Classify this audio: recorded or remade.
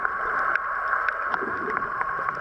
remade